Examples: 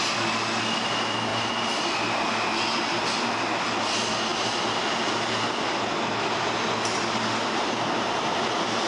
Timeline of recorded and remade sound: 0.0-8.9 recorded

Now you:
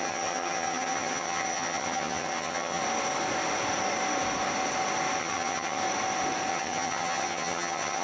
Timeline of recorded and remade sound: 0.0-2.8 remade; 2.8-5.2 recorded; 5.2-5.8 remade; 5.8-6.5 recorded; 6.5-8.0 remade

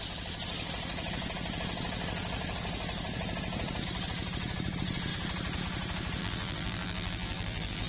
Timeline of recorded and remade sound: 0.0-6.2 recorded; 6.2-7.9 remade

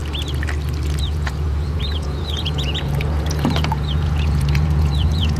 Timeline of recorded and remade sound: 0.0-1.0 recorded; 1.0-5.4 remade